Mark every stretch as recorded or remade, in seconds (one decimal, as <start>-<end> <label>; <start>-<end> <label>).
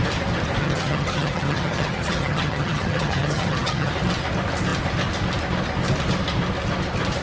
0.0-0.6 recorded; 0.6-3.9 remade; 3.9-7.2 recorded